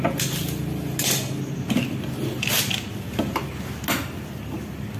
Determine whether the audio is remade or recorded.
recorded